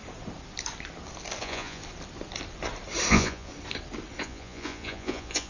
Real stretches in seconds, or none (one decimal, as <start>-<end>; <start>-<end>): 0.0-1.4; 1.8-3.1; 3.5-4.2